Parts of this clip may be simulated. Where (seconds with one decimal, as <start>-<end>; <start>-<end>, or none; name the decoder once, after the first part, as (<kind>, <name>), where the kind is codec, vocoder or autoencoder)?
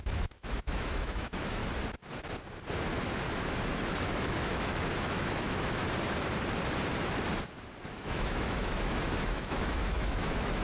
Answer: 0.0-1.6 (autoencoder, DAC-VAE); 3.9-5.8; 7.9-10.6